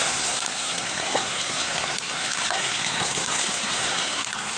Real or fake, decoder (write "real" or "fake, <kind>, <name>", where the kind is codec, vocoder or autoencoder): fake, codec, SNAC